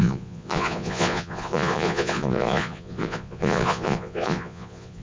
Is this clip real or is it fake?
fake